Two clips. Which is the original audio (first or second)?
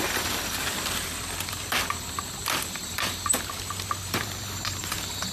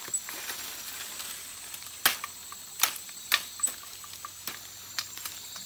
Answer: second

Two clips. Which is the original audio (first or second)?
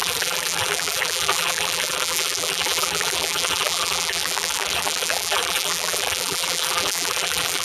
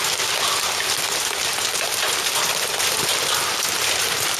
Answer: second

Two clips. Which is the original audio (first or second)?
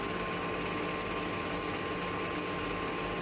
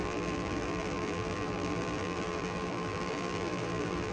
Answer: first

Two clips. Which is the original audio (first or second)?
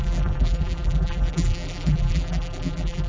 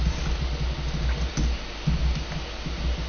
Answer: second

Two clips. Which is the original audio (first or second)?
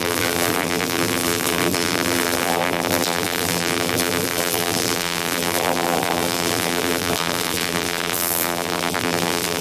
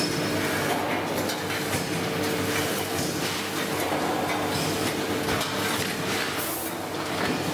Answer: second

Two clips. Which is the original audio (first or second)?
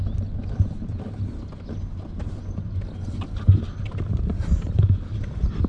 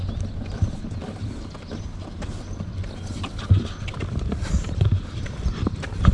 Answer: first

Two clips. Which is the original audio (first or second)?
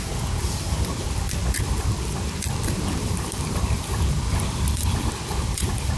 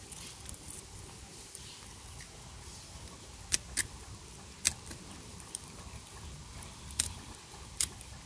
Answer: second